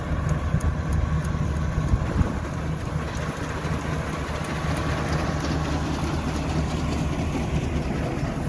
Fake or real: real